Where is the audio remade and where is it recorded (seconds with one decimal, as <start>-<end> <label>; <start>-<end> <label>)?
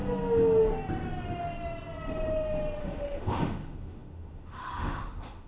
0.0-2.8 recorded; 2.8-5.5 remade